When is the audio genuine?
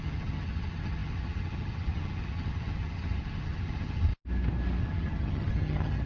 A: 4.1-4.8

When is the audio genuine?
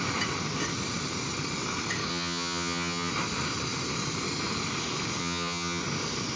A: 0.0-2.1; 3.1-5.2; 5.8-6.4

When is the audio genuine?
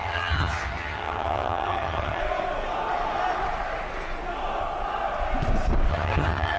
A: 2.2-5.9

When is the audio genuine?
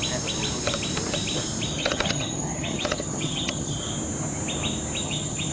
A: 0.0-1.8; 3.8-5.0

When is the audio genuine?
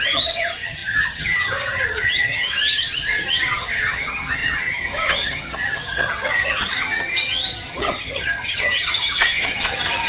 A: none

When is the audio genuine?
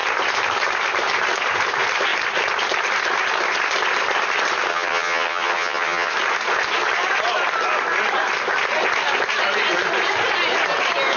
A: 0.0-4.7; 6.1-11.2